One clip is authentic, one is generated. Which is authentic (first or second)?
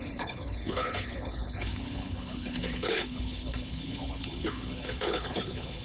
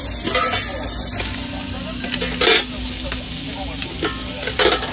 second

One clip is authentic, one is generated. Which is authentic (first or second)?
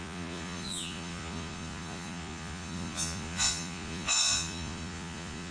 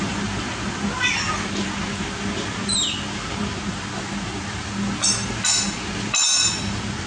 second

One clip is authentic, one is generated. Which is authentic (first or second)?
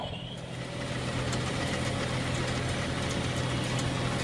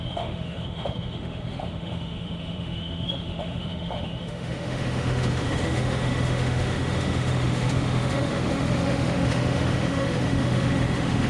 first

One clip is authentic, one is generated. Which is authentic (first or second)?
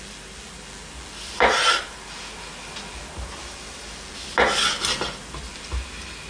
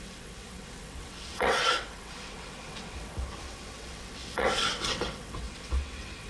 first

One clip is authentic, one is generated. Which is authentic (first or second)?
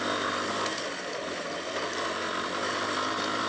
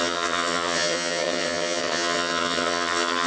first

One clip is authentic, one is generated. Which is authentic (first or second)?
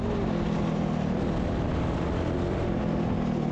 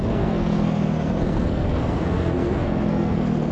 first